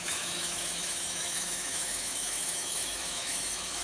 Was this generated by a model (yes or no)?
yes